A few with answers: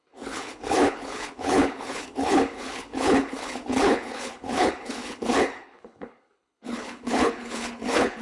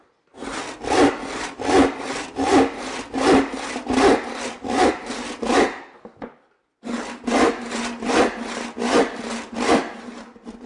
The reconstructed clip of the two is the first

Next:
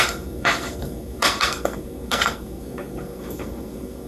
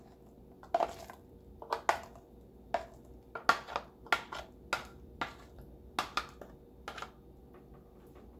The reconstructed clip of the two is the first